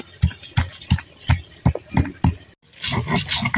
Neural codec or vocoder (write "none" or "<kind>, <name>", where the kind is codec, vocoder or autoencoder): none